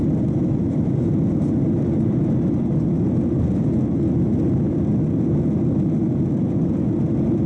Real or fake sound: real